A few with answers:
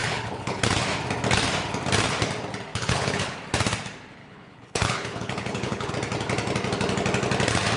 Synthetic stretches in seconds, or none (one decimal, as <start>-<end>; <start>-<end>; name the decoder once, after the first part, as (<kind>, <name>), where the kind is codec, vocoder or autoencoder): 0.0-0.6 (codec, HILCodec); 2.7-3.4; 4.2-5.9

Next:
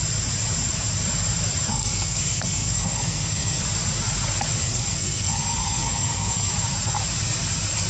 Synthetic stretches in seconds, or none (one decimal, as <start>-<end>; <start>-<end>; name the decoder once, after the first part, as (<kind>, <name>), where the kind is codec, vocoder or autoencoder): 1.7-3.6 (codec, SNAC); 4.6-6.5

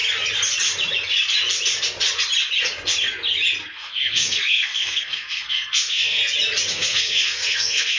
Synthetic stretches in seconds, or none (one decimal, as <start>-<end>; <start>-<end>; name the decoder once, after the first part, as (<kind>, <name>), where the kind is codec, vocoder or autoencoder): 3.7-6.2 (codec, SNAC); 6.7-8.0

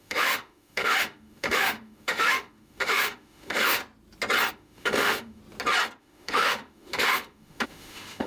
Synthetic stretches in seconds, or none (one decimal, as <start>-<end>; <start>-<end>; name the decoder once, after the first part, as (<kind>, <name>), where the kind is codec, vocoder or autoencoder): 0.0-3.8 (autoencoder, DAC-VAE); 4.5-5.4; 6.0-8.3

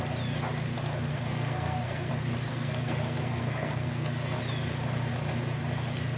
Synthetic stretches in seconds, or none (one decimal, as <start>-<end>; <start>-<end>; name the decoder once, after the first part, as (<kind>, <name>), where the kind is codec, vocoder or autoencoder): 1.1-2.1 (codec, SNAC); 2.5-4.4

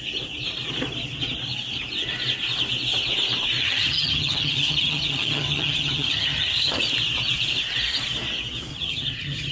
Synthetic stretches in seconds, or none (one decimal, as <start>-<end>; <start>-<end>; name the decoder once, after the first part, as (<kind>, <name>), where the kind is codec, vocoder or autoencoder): 3.6-6.8 (vocoder, HiFi-GAN); 8.7-9.5

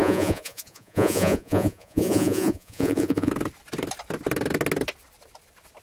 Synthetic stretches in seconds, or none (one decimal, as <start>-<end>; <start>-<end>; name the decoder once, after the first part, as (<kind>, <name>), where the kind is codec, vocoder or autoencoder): 0.0-3.3 (vocoder, Vocos)